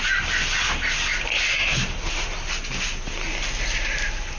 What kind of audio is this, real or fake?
real